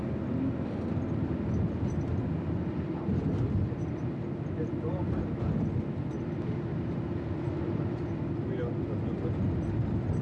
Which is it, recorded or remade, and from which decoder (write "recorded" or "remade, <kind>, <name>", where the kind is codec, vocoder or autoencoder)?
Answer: recorded